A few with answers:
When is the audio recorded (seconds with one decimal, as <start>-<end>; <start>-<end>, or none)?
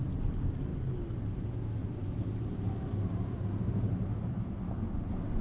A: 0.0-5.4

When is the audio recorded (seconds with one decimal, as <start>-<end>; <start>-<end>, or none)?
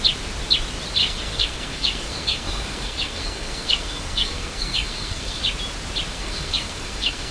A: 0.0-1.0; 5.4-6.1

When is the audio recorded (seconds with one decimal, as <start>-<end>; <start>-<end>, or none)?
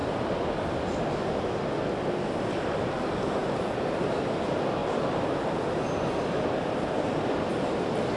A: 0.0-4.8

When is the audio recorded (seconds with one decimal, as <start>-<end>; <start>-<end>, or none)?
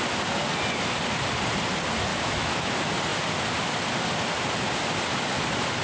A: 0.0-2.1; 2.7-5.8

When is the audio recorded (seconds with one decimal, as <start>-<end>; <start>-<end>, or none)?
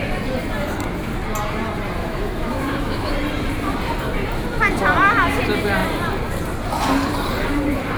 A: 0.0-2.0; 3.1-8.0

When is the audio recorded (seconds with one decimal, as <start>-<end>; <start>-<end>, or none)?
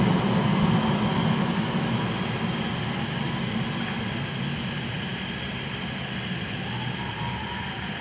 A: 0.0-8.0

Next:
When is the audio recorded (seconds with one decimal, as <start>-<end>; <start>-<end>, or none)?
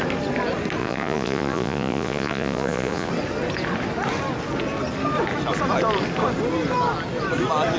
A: 0.0-0.8; 3.1-7.8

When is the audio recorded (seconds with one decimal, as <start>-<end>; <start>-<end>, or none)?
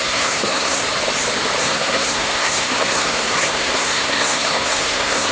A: 0.8-1.6